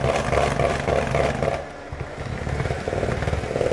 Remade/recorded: recorded